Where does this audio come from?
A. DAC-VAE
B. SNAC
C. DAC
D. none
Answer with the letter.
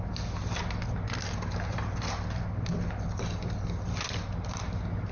D